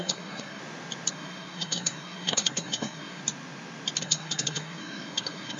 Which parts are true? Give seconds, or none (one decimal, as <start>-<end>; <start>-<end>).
0.6-1.1; 3.2-4.0